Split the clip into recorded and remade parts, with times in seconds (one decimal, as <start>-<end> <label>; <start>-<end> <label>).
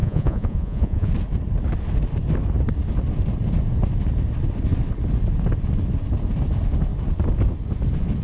0.0-1.1 remade; 1.1-8.2 recorded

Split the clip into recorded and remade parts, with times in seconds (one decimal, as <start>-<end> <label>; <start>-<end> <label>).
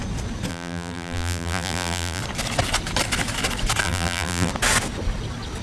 0.0-0.5 recorded; 0.5-2.2 remade; 2.2-3.8 recorded; 3.8-4.5 remade; 4.5-5.6 recorded